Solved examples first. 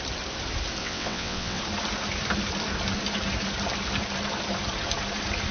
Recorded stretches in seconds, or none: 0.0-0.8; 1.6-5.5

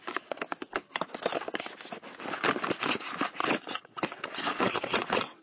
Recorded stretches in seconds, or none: 0.0-3.4

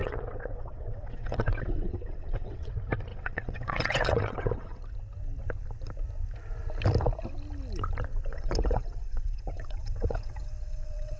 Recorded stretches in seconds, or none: 2.7-3.1; 4.8-8.3

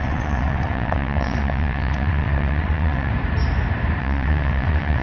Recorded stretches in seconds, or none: 3.1-4.0

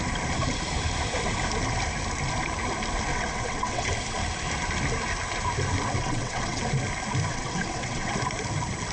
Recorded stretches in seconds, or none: 0.0-3.1; 3.9-6.0; 6.6-7.3; 8.1-8.9

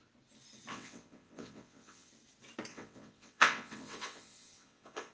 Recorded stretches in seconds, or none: 0.0-0.7; 2.1-2.7